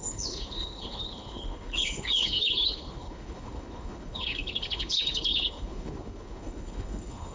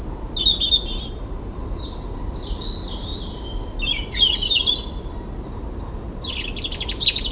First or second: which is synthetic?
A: first